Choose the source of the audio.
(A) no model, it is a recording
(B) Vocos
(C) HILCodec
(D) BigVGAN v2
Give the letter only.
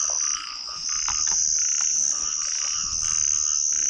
A